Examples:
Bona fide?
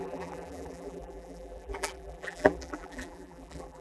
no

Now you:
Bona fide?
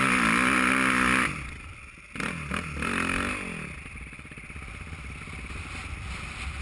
yes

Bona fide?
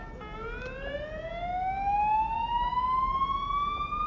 yes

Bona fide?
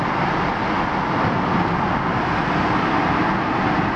yes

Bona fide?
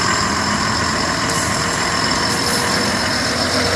yes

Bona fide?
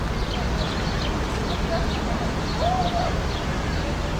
yes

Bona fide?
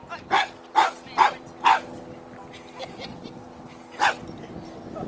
yes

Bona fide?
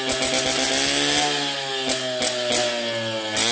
yes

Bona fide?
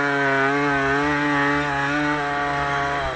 yes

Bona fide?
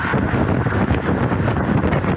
yes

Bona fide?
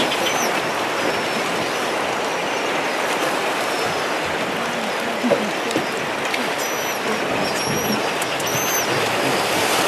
yes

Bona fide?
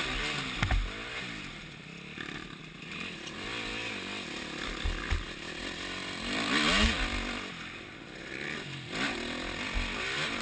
yes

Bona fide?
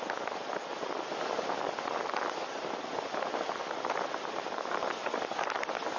yes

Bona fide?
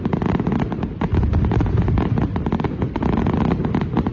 yes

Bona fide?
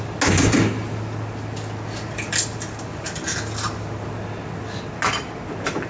yes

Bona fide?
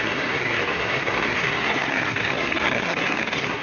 no